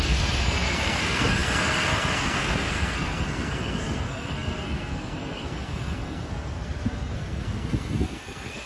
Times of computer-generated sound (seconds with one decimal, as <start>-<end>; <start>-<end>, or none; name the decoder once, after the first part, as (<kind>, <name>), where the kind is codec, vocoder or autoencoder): 0.0-8.7 (codec, SNAC)